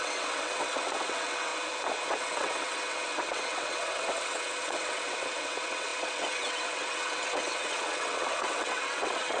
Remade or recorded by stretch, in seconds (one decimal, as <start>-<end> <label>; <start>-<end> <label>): 0.0-1.5 remade; 1.5-2.0 recorded; 2.0-9.4 remade